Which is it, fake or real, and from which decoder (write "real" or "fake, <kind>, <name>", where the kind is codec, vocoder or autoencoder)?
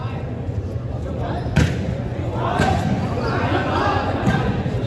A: fake, vocoder, Vocos